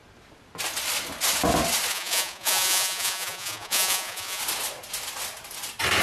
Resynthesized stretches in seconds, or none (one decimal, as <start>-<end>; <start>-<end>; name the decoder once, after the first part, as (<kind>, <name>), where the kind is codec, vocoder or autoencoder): 1.9-4.4 (vocoder, Vocos)

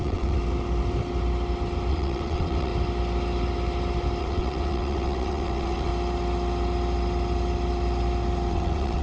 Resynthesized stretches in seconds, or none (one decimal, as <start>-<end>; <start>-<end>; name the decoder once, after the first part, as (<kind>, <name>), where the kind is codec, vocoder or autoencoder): 0.0-0.4 (vocoder, WaveNeXt); 1.9-2.7; 4.2-5.9; 8.5-9.0

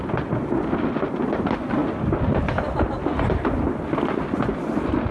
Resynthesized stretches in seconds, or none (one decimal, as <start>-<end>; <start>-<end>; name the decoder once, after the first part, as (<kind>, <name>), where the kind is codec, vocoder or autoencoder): none

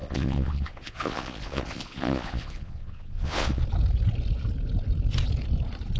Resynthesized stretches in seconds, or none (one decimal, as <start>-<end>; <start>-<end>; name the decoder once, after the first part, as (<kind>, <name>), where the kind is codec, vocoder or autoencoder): 0.0-3.6 (vocoder, Vocos)

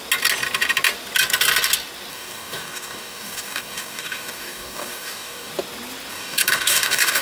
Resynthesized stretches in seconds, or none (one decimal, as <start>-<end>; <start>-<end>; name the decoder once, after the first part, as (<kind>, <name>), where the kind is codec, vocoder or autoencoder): 2.1-5.5 (codec, DAC); 6.1-7.2